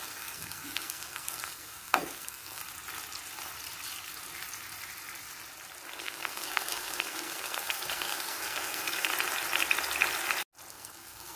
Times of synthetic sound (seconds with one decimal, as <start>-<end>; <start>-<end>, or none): 0.0-2.6; 6.0-9.1; 10.7-11.4